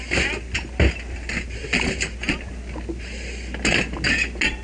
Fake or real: real